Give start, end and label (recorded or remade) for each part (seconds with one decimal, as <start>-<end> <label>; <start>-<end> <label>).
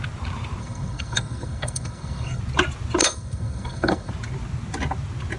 0.0-0.6 recorded; 0.6-2.4 remade; 2.4-3.0 recorded; 3.0-4.1 remade; 4.1-5.4 recorded